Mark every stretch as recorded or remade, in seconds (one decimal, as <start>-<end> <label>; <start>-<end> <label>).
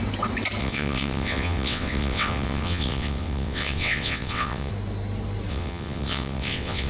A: 0.0-0.6 recorded; 0.6-4.7 remade; 4.7-5.5 recorded; 5.5-6.9 remade